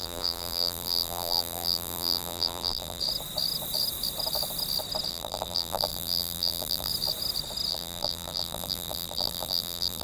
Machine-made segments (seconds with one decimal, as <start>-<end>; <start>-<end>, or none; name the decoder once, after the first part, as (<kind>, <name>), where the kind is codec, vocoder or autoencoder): 0.0-3.0 (vocoder, BigVGAN v2); 5.1-6.9; 7.7-10.0